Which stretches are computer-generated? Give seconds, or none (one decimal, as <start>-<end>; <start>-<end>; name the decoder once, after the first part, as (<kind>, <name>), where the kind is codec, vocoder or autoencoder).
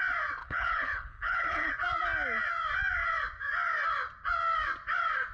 0.4-1.7 (codec, HILCodec)